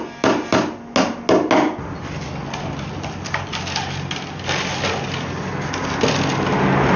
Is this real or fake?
real